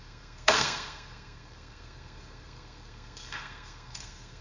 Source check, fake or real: fake